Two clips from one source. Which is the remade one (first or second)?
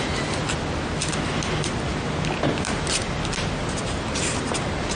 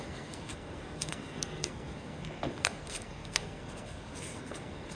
second